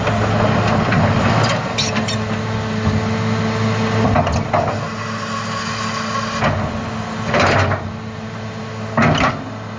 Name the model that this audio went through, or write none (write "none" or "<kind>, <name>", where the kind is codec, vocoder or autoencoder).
none